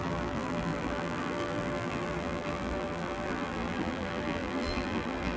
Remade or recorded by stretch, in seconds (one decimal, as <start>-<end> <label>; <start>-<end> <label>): 0.0-5.4 remade